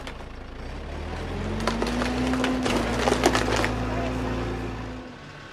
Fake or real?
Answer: real